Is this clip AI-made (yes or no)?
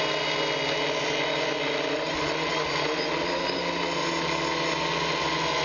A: no